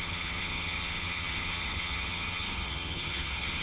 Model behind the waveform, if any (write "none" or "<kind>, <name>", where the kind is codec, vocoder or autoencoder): vocoder, HiFi-GAN